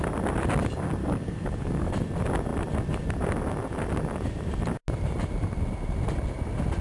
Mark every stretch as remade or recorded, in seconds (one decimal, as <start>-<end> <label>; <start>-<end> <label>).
0.0-1.0 recorded; 1.0-1.9 remade; 1.9-6.8 recorded